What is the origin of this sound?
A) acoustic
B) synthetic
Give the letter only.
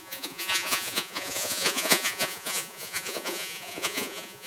B